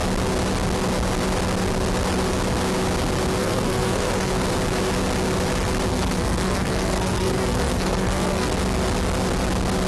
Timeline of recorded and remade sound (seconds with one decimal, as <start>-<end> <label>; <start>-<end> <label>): 0.0-3.4 recorded; 3.4-4.3 remade; 4.3-5.9 recorded; 5.9-8.6 remade; 8.6-9.9 recorded